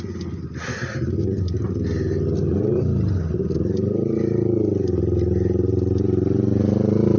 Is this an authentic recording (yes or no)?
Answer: yes